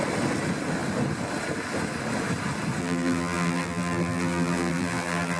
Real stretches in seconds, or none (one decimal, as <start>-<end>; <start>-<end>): 0.0-2.8